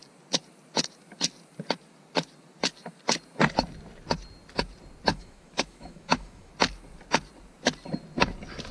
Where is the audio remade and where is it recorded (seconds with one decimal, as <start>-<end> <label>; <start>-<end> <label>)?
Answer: 0.0-5.1 recorded; 5.1-6.5 remade; 6.5-8.7 recorded